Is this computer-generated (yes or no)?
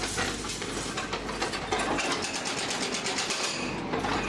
no